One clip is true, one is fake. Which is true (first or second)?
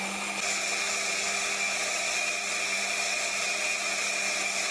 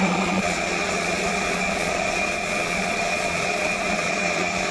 first